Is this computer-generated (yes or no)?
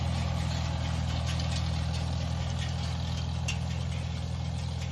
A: no